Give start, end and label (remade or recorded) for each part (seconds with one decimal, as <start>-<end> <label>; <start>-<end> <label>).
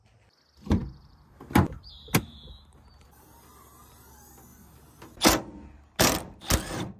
0.0-0.8 recorded; 0.8-1.4 remade; 1.4-7.0 recorded